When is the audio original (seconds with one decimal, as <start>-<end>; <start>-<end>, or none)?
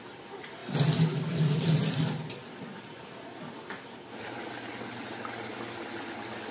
0.0-6.5